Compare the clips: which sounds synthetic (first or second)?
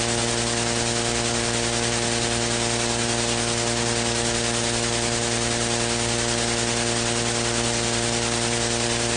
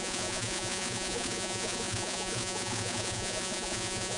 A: second